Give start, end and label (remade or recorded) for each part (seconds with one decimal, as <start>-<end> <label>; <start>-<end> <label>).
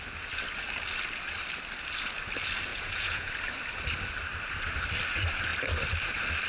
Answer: 0.0-2.7 recorded; 2.7-3.3 remade; 3.3-6.5 recorded